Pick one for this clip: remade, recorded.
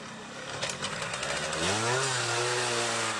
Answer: recorded